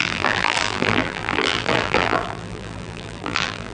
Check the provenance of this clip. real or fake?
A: fake